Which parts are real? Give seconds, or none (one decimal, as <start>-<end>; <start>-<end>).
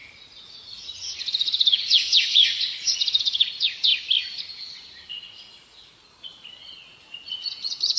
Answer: 3.9-5.1